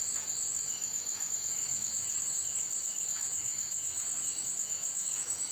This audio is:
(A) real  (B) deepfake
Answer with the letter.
B